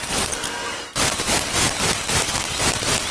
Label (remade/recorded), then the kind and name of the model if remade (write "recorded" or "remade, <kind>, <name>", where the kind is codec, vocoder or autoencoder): recorded